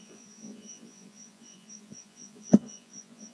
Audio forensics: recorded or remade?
remade